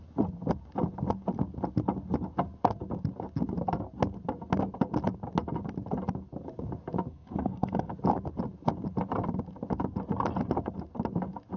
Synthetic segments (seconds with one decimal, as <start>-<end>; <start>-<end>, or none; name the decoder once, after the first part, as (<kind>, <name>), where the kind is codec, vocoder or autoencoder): 7.1-7.9 (codec, SNAC)